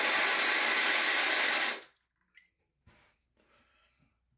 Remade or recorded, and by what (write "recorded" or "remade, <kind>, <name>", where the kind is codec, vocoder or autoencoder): remade, vocoder, BigVGAN v2